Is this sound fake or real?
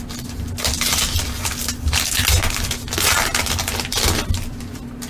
real